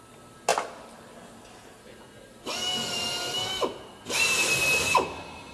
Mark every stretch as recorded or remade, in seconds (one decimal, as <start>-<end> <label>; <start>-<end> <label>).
0.0-5.5 recorded